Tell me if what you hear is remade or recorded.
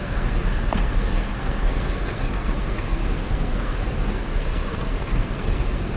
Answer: remade